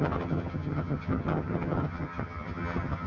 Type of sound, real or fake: fake